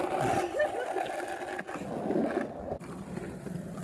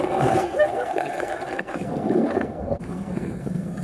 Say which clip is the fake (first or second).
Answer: second